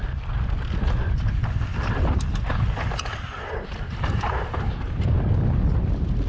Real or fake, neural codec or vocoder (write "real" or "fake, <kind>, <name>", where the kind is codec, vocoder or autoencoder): real